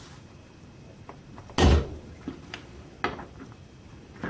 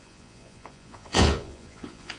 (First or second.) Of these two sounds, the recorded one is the first